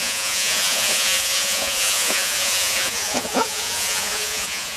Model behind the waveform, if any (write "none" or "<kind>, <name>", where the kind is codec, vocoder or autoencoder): vocoder, Vocos